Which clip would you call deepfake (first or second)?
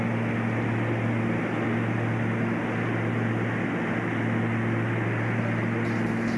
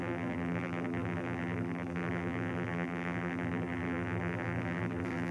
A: second